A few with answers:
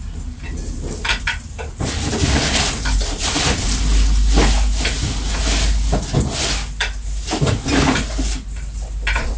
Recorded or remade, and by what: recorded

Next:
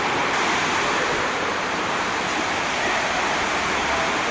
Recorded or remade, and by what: recorded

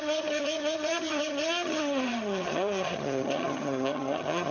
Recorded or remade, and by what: remade, vocoder, HiFi-GAN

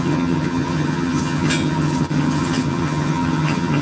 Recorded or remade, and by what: remade, vocoder, HiFi-GAN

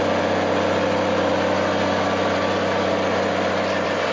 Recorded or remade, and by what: recorded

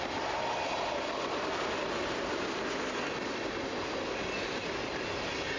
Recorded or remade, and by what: recorded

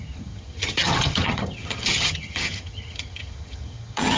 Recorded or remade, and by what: remade, vocoder, HiFi-GAN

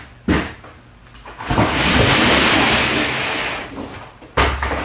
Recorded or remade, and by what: recorded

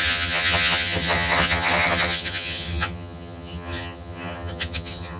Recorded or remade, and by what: remade, vocoder, HiFi-GAN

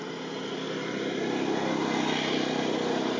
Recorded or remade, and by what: recorded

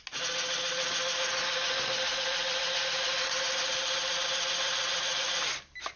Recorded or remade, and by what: recorded